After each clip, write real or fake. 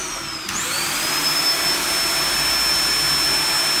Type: real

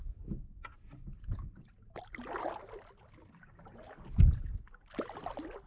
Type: real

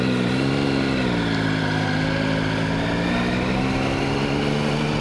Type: real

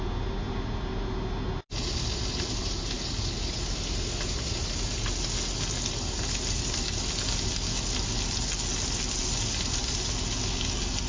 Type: real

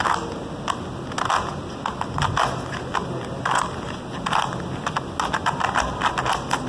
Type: real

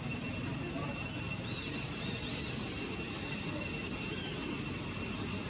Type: real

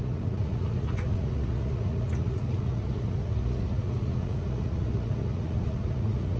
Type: fake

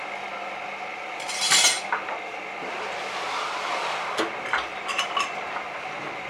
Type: real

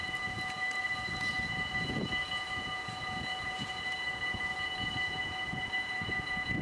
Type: fake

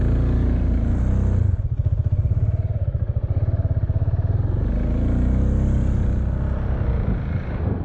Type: real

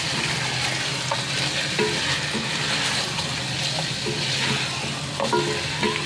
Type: real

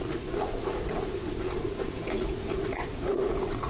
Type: fake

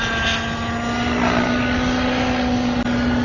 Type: real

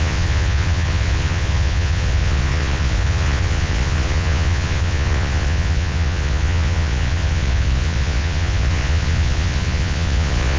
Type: fake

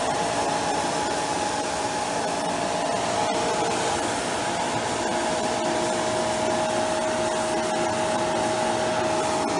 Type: real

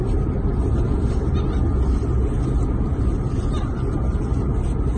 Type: real